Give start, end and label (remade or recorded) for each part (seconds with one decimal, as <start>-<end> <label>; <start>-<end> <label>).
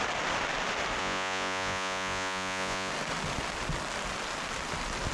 0.0-1.0 recorded; 1.0-2.9 remade; 2.9-5.1 recorded